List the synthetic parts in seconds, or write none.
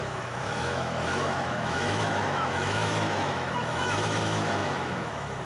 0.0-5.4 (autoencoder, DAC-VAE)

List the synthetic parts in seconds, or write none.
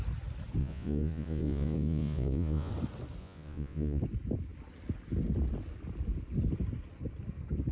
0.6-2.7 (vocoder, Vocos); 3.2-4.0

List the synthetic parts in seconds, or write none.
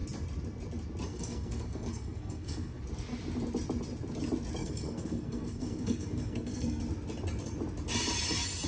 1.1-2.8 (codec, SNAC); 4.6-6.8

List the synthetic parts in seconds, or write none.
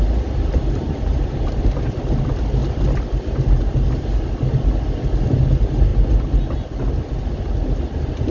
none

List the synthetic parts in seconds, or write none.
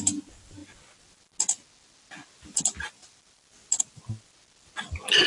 none